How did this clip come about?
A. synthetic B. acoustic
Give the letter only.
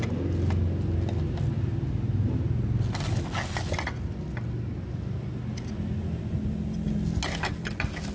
B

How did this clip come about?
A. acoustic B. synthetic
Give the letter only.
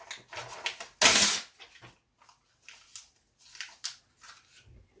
A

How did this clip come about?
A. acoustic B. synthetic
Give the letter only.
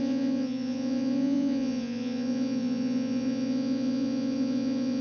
B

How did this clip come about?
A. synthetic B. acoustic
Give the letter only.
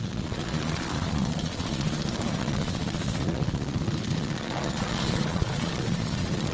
A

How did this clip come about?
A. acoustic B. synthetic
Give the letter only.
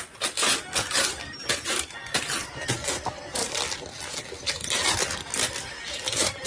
A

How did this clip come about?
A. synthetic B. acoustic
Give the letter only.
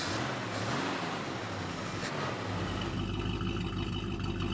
B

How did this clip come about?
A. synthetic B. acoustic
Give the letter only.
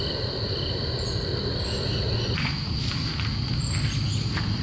B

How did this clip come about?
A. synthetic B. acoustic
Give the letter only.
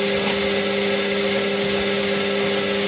B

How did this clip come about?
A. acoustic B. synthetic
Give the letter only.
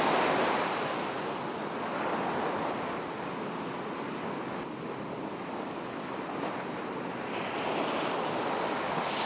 A